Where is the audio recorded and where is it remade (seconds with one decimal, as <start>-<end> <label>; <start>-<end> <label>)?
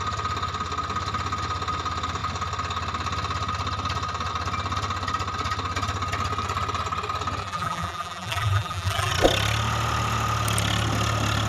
0.0-7.4 recorded; 7.4-9.1 remade; 9.1-11.5 recorded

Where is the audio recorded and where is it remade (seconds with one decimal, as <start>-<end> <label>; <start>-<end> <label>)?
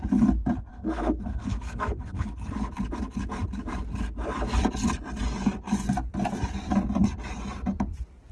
0.0-0.7 recorded; 0.7-2.5 remade; 2.5-8.3 recorded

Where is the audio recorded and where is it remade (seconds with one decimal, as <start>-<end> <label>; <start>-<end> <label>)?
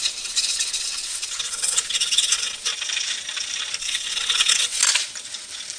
0.0-2.7 remade; 2.7-3.8 recorded; 3.8-4.8 remade; 4.8-5.8 recorded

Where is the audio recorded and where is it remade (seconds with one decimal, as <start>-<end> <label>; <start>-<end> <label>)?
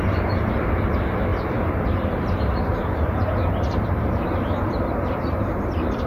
0.0-6.1 remade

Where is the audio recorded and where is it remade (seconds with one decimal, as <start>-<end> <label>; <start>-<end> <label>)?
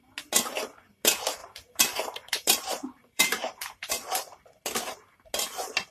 0.0-1.4 recorded; 1.4-3.9 remade; 3.9-5.9 recorded